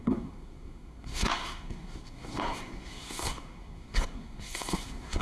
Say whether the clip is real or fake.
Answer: fake